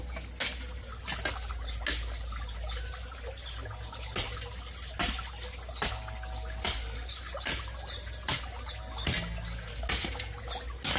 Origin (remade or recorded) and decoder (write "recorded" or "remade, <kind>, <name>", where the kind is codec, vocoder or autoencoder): recorded